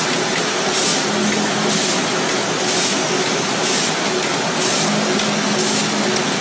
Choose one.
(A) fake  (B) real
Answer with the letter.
B